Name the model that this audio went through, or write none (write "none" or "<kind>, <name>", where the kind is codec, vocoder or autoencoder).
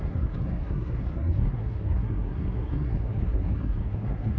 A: codec, SNAC